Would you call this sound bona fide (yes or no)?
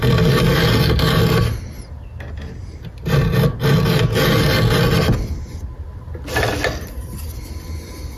yes